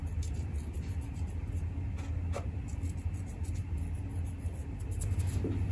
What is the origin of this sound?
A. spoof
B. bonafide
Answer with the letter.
B